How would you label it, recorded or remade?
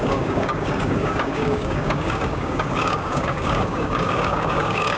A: remade